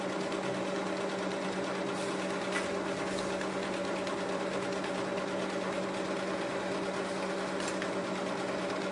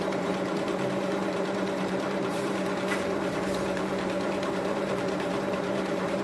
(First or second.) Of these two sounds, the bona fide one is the first